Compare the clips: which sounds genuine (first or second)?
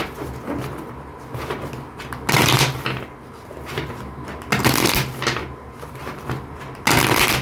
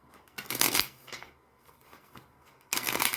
first